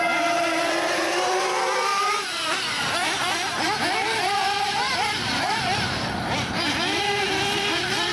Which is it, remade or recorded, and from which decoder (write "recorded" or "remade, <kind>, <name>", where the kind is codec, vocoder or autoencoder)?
remade, vocoder, BigVGAN v2